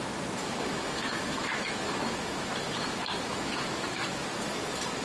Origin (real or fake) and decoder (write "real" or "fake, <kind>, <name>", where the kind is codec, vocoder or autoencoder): fake, autoencoder, DAC-VAE